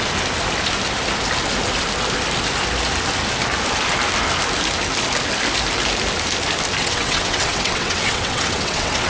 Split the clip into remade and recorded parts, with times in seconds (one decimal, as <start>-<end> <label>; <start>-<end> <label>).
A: 0.0-6.8 recorded; 6.8-9.1 remade